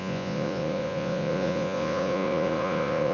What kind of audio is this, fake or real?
fake